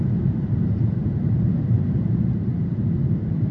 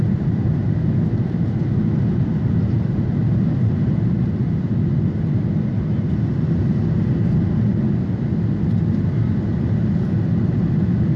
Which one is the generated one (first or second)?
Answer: first